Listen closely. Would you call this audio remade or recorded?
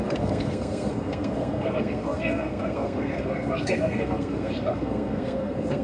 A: remade